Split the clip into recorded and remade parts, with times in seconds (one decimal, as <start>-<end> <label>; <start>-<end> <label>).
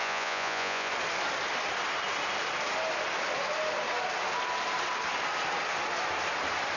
0.0-0.9 remade; 0.9-6.8 recorded